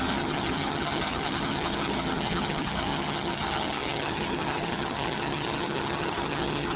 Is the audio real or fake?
fake